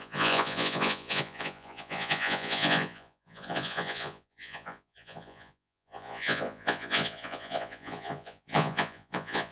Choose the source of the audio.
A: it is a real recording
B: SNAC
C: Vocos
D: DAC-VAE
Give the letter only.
C